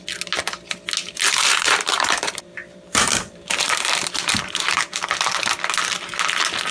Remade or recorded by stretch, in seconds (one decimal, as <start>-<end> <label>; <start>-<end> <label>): 0.0-1.0 recorded; 1.0-5.0 remade; 5.0-6.7 recorded